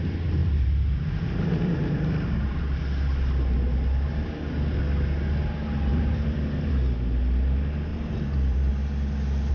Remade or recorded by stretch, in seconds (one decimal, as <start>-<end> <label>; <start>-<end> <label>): 0.0-0.4 recorded; 0.4-2.8 remade; 2.8-5.9 recorded; 5.9-6.7 remade; 6.7-7.9 recorded; 7.9-8.7 remade; 8.7-9.5 recorded